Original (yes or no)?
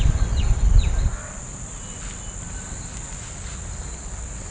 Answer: yes